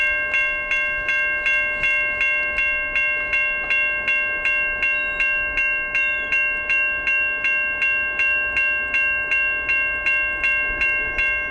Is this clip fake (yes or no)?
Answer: no